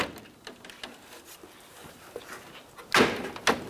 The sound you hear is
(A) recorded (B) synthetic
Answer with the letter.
A